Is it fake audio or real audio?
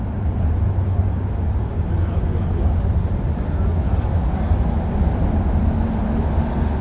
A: real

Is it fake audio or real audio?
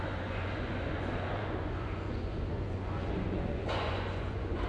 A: fake